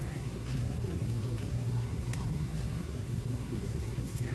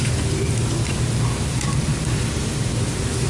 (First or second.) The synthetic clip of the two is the first